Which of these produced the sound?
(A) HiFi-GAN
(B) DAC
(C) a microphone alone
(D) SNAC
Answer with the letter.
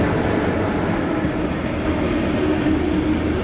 C